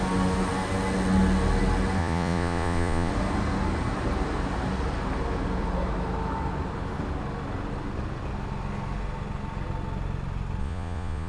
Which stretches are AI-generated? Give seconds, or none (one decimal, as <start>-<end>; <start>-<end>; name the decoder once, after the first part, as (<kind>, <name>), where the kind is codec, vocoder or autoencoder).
2.0-3.1 (vocoder, Vocos); 10.6-11.3